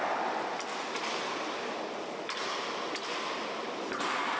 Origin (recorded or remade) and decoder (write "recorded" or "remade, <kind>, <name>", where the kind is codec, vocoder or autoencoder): recorded